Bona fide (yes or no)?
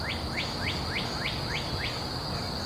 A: yes